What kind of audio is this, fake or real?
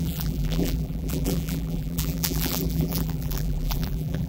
fake